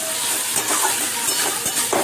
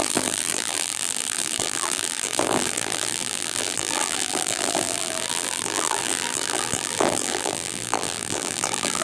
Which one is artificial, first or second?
second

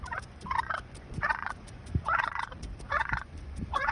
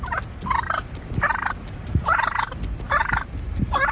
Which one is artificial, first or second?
first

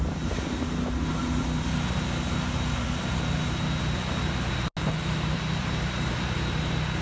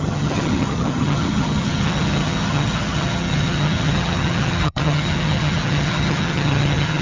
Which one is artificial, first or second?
second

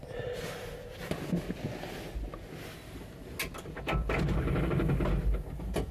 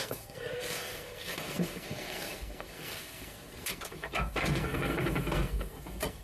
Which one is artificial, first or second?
second